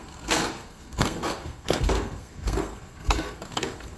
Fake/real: fake